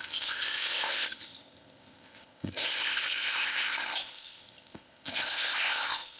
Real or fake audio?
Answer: fake